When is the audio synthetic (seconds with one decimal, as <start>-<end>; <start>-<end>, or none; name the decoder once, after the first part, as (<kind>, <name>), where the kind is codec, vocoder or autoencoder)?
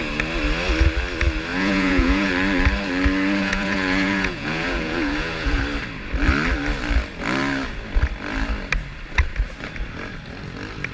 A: 1.5-2.3 (vocoder, Vocos); 3.4-5.6